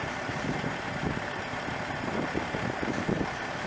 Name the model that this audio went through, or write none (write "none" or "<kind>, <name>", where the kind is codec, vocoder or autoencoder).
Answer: vocoder, BigVGAN v2